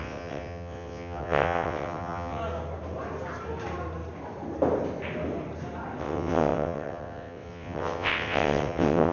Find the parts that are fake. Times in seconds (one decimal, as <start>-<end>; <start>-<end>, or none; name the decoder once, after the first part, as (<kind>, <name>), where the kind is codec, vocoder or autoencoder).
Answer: 0.0-2.4 (vocoder, WaveNeXt); 6.0-9.1